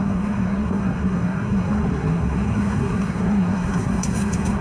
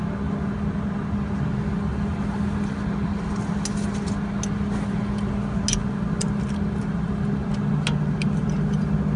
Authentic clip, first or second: second